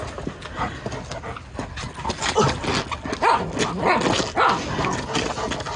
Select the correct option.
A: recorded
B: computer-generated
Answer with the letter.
A